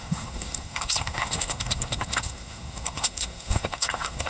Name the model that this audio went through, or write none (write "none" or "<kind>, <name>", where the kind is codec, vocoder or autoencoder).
codec, SNAC